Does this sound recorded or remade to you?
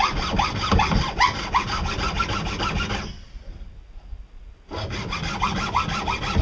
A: recorded